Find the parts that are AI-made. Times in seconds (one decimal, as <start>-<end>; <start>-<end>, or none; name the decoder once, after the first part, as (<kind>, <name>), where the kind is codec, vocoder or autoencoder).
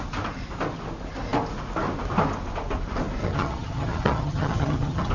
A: 3.2-5.1 (vocoder, HiFi-GAN)